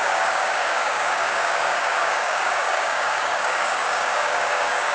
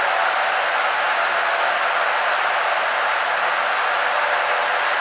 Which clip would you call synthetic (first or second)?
first